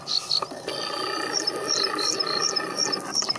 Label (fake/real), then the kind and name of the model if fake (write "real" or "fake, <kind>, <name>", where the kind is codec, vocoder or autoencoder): real